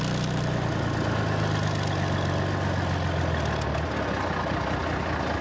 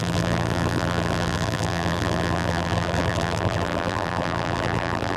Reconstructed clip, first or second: second